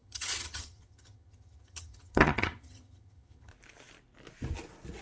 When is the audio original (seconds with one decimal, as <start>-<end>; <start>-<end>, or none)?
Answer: 3.5-5.0